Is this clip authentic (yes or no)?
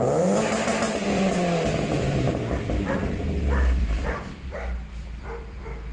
no